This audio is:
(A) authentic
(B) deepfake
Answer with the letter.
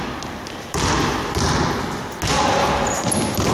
A